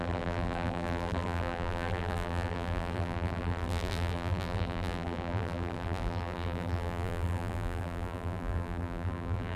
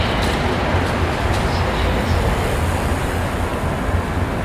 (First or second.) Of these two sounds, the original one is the second